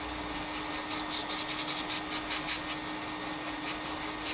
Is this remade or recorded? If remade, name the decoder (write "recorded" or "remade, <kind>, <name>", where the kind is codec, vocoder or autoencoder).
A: recorded